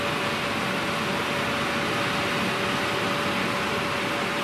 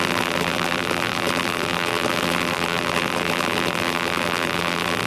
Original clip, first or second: first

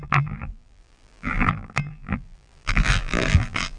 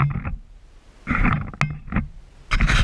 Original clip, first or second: second